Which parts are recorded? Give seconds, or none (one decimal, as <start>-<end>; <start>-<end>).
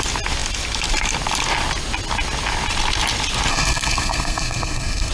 0.0-3.5